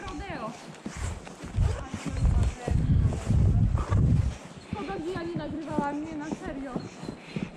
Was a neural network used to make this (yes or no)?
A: no